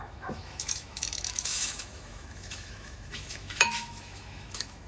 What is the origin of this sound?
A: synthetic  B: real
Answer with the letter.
A